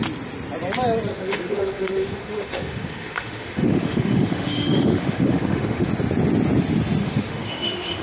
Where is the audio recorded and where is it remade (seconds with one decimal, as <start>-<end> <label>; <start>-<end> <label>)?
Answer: 0.0-1.1 recorded; 1.1-5.9 remade; 5.9-7.0 recorded; 7.0-8.0 remade